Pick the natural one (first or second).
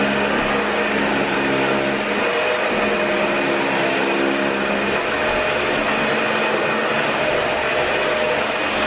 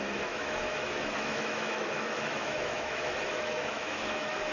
first